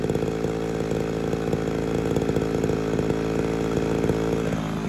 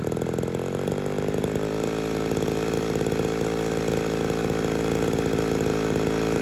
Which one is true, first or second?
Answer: first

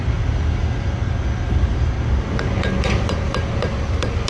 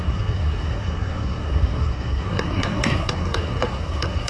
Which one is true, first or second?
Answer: first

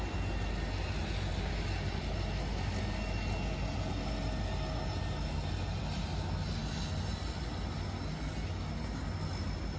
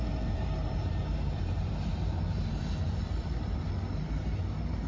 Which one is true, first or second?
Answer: first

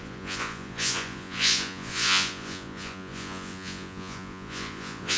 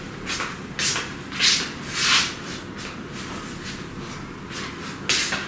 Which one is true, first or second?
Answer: second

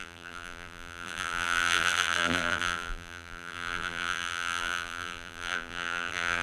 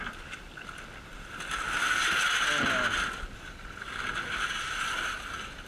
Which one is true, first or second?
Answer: second